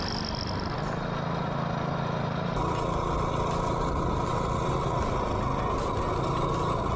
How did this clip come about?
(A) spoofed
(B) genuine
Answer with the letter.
B